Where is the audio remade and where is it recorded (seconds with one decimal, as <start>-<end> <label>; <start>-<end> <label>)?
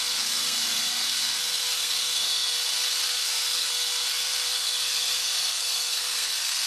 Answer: 0.0-6.7 remade